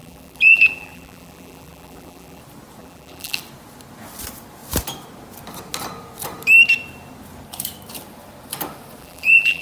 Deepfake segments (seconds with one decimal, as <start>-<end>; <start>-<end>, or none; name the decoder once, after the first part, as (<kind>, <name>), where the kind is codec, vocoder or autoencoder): 0.0-2.4 (vocoder, BigVGAN v2); 2.8-3.4; 9.0-9.6